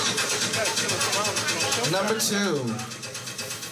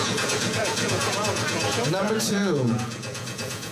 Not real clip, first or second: second